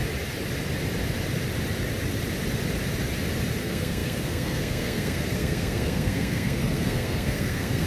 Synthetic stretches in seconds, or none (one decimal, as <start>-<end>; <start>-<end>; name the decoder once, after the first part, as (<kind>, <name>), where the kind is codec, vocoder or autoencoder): 3.6-7.9 (codec, SNAC)